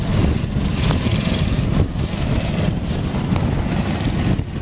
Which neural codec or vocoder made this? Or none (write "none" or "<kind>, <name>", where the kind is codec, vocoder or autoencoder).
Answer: none